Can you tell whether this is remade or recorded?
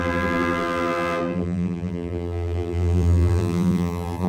remade